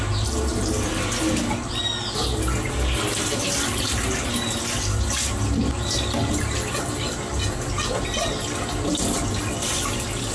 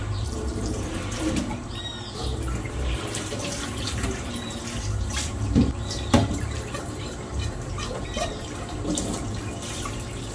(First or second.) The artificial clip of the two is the second